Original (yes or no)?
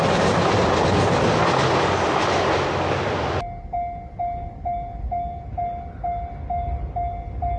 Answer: yes